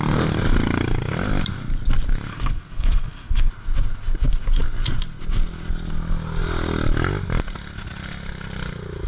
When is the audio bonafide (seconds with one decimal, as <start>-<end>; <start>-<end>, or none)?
0.0-2.3; 3.5-9.1